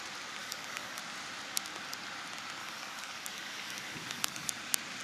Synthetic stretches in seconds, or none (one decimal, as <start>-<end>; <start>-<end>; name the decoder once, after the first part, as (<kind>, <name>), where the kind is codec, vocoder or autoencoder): 0.4-1.0 (codec, DAC); 2.6-4.5